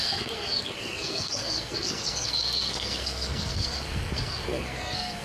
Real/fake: fake